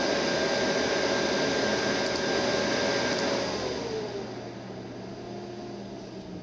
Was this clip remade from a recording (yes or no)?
no